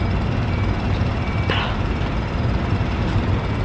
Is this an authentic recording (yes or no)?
yes